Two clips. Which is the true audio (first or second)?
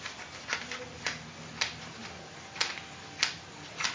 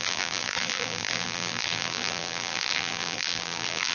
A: first